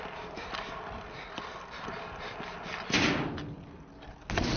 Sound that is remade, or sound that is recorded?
recorded